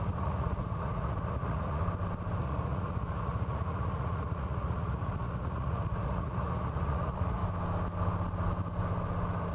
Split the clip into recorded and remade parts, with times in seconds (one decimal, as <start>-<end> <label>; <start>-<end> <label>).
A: 0.0-1.8 remade; 1.8-2.4 recorded; 2.4-7.4 remade; 7.4-9.5 recorded